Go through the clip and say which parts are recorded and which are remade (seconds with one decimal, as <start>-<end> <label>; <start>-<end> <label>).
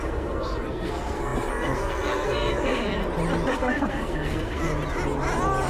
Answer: 0.0-3.0 remade; 3.0-3.5 recorded; 3.5-4.7 remade; 4.7-5.7 recorded